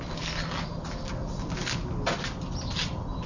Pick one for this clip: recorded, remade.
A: recorded